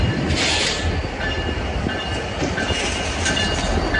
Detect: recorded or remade recorded